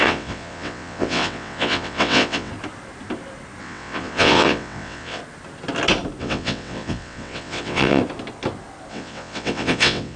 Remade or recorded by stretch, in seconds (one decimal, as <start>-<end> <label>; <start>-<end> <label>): 0.0-2.5 remade; 2.5-3.6 recorded; 3.6-5.2 remade; 5.2-6.2 recorded; 6.2-8.0 remade; 8.0-8.9 recorded; 8.9-10.2 remade